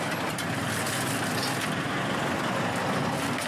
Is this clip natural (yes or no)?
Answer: yes